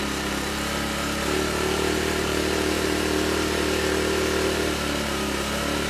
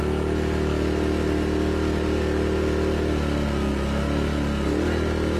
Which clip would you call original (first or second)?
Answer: second